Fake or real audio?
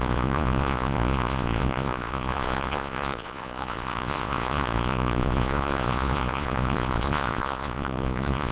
fake